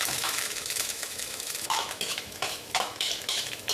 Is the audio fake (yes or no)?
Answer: yes